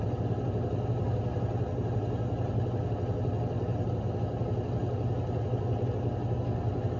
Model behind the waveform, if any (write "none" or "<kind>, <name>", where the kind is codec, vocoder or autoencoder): none